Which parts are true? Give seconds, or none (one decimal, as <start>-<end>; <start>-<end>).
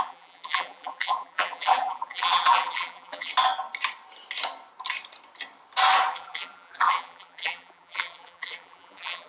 3.3-6.1